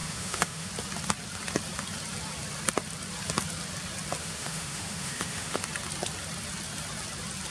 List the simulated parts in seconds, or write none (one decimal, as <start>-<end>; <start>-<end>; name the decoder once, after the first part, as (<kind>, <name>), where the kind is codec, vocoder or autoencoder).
0.0-0.7 (autoencoder, DAC-VAE); 4.2-5.6